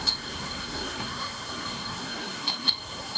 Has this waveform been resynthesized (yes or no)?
yes